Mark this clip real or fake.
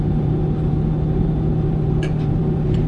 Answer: real